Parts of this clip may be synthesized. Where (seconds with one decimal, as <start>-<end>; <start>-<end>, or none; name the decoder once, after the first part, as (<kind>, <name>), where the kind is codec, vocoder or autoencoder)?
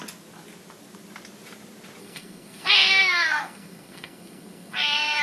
2.0-5.2 (codec, SNAC)